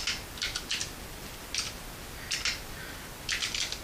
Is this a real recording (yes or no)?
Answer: yes